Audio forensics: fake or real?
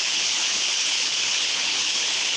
fake